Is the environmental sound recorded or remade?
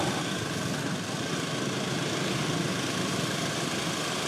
recorded